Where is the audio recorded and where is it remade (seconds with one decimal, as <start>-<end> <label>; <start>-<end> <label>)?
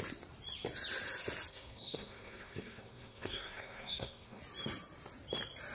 0.0-1.5 recorded; 1.5-4.4 remade; 4.4-5.7 recorded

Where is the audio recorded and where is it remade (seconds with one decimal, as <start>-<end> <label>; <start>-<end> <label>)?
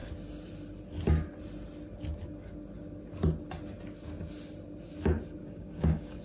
0.0-5.4 recorded; 5.4-6.2 remade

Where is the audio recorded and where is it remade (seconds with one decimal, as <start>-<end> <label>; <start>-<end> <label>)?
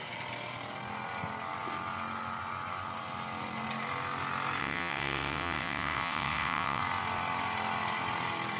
0.0-4.6 recorded; 4.6-6.8 remade; 6.8-8.6 recorded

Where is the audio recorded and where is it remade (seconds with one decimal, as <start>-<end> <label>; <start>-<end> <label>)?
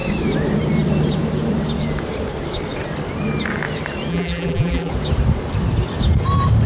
0.0-4.1 recorded; 4.1-4.9 remade; 4.9-6.7 recorded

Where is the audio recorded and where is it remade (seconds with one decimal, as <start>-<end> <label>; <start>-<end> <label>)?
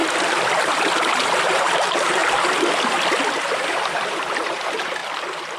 0.0-1.1 recorded; 1.1-2.2 remade; 2.2-3.3 recorded; 3.3-5.0 remade; 5.0-5.6 recorded